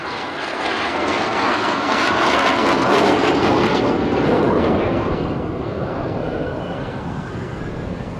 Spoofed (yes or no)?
yes